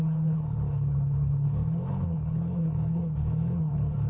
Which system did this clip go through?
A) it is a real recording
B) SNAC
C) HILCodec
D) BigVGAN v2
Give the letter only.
C